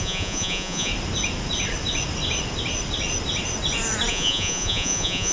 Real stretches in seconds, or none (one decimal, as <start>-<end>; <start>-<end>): 0.9-4.1